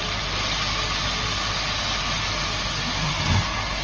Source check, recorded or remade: recorded